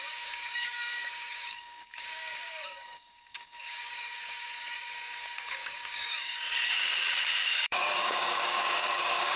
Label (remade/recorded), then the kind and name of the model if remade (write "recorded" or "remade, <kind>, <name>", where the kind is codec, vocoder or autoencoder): remade, codec, DAC